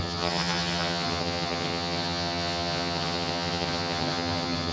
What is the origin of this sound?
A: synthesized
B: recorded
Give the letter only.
A